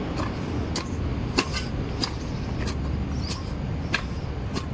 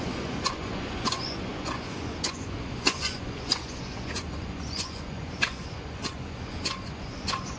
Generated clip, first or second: second